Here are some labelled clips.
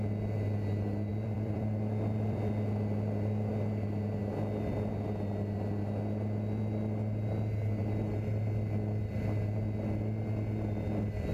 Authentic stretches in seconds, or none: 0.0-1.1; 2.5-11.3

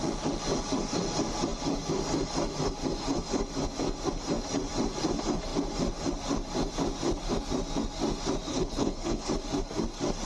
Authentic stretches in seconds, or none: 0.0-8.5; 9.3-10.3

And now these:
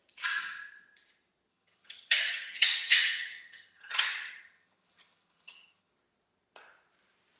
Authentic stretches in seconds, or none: 0.0-1.5; 5.9-7.4

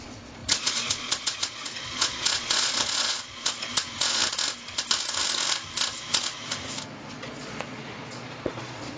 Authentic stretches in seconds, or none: 4.2-7.1

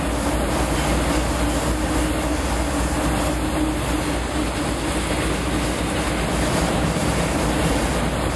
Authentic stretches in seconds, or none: 0.0-7.0; 7.7-8.4

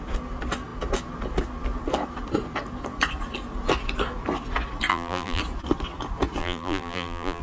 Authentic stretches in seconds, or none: 0.0-4.9; 5.4-6.4

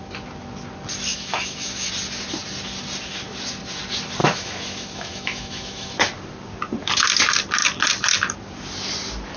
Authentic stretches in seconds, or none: 0.0-1.1; 1.9-4.2; 5.9-9.4

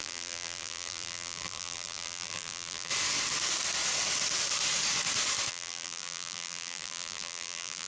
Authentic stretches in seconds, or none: 2.9-5.5